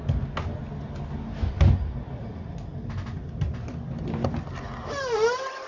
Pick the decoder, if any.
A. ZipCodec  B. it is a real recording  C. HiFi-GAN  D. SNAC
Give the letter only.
B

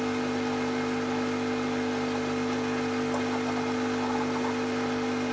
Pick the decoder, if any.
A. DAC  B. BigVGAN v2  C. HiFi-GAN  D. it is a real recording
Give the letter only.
D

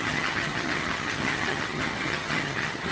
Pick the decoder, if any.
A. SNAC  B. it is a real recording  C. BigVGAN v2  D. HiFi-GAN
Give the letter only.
D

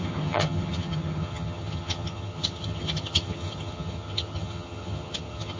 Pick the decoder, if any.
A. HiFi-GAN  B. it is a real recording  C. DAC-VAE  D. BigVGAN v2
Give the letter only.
A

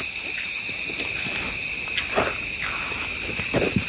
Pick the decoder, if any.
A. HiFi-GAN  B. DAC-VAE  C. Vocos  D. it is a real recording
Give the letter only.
D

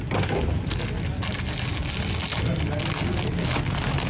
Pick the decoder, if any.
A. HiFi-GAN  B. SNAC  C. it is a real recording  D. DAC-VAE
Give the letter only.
C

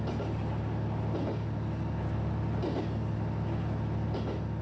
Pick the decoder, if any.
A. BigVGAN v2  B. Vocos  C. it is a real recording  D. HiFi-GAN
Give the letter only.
C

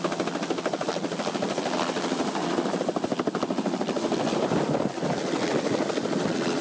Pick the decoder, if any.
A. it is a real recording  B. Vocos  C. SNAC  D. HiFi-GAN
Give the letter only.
A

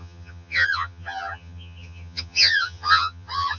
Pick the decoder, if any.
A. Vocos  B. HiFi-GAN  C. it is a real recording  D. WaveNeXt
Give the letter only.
B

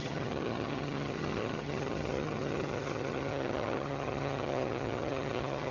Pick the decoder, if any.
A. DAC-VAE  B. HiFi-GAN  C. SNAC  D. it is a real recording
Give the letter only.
B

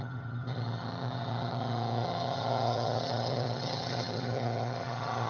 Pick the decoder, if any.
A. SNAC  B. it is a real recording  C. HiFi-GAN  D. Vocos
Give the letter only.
C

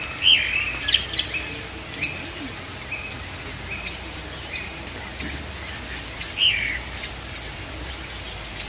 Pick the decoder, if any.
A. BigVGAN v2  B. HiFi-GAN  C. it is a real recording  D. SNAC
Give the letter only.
C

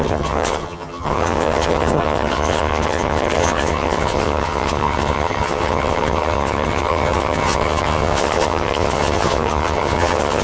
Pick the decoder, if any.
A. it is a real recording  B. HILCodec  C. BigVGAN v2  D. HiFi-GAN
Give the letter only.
D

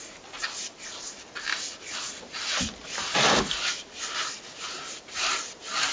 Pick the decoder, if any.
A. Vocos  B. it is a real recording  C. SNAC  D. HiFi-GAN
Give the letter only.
B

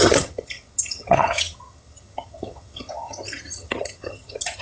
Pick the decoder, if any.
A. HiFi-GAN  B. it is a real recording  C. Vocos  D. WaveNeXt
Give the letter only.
A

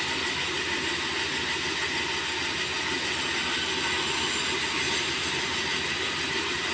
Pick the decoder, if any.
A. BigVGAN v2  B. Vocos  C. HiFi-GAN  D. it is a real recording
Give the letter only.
D